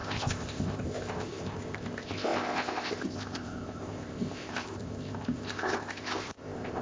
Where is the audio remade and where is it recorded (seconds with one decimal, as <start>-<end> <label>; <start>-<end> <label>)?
0.0-6.8 remade